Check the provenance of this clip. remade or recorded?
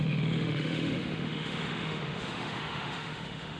remade